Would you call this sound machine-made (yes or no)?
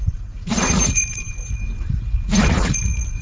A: yes